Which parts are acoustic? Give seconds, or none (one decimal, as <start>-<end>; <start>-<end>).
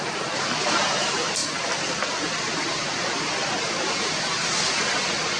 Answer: 0.0-5.4